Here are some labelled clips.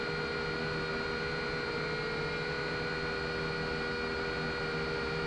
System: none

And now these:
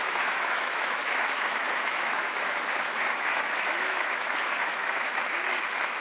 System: autoencoder, DAC-VAE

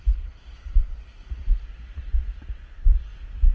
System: vocoder, BigVGAN v2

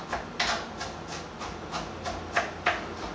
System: none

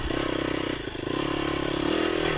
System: none